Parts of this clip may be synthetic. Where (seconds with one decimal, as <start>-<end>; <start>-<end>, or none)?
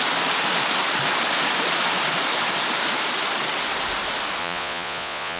4.4-5.4